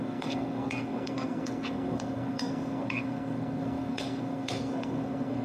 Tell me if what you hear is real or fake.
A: fake